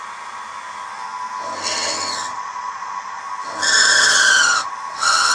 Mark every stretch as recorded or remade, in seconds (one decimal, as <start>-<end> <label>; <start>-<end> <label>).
0.0-2.3 recorded; 2.3-3.2 remade; 3.2-3.8 recorded; 3.8-4.7 remade; 4.7-5.3 recorded